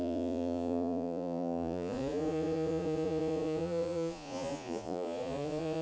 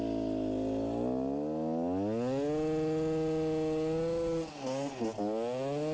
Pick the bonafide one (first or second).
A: second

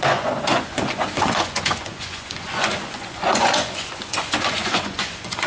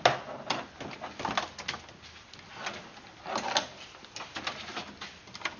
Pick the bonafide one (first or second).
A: second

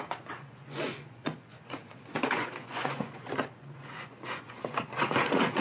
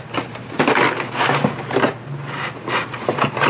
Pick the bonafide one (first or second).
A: second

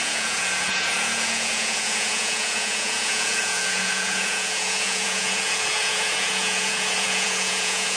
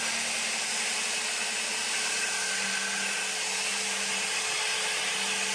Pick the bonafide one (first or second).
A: second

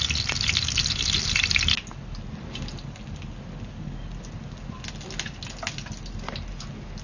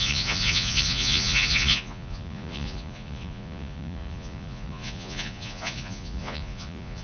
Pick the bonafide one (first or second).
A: first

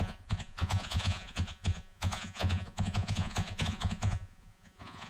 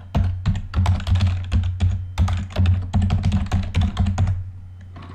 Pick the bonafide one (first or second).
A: second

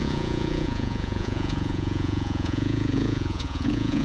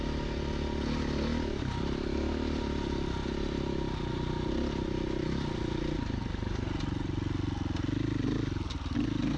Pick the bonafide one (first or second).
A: second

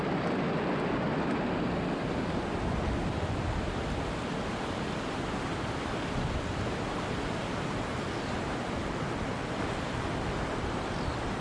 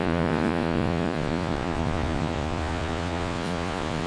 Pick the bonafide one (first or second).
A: first